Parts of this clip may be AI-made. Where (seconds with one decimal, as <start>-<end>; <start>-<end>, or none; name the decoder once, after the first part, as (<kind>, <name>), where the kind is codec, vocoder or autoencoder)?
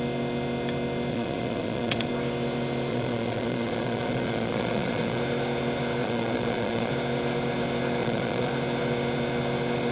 1.1-2.1 (vocoder, Vocos); 2.9-5.2; 6.0-6.9; 8.0-8.5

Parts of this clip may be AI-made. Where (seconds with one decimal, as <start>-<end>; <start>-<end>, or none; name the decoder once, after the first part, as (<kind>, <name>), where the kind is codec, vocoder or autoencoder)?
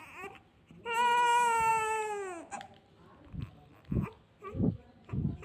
0.0-0.7 (vocoder, BigVGAN v2)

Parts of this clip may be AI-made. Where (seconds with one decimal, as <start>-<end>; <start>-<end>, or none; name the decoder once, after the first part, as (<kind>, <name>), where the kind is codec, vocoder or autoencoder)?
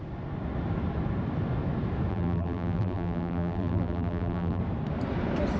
2.1-4.6 (vocoder, BigVGAN v2)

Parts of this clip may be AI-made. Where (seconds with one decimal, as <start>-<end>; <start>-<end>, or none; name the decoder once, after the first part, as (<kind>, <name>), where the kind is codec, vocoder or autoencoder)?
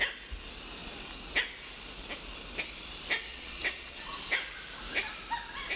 3.3-4.1 (vocoder, WaveNeXt)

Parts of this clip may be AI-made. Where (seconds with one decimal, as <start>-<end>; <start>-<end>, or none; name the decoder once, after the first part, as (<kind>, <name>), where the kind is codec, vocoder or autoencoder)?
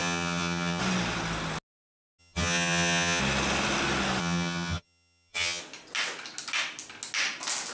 0.0-0.8 (vocoder, HiFi-GAN); 2.2-3.2; 4.2-5.6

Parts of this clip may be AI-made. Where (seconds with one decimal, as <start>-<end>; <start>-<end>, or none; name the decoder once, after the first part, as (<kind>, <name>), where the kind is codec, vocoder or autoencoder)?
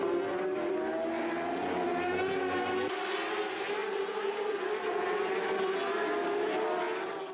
3.8-5.4 (vocoder, BigVGAN v2)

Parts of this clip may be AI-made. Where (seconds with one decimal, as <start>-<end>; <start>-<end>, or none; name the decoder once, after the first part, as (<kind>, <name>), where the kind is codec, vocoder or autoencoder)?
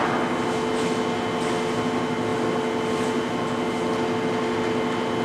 none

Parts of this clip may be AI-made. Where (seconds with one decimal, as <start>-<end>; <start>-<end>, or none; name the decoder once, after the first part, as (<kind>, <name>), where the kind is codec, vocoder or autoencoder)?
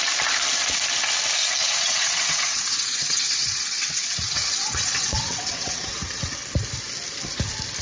1.6-6.3 (vocoder, WaveNeXt)